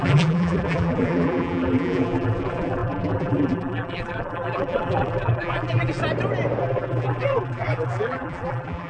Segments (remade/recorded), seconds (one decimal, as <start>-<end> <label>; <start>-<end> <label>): 0.0-6.0 remade; 6.0-6.6 recorded; 6.6-8.9 remade